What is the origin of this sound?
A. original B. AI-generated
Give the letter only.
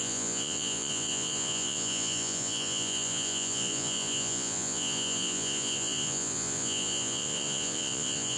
B